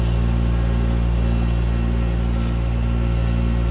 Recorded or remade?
recorded